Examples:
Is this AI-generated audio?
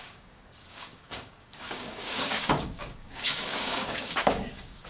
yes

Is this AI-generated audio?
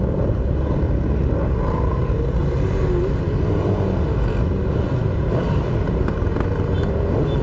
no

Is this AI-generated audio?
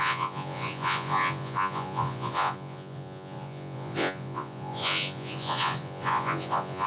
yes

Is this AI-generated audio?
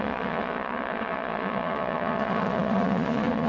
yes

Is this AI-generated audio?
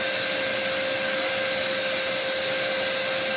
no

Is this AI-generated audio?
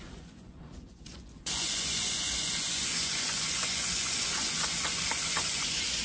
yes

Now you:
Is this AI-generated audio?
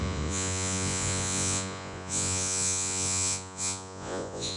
yes